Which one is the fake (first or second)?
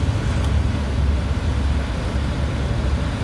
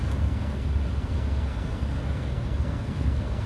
second